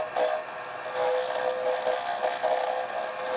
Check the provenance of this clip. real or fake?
real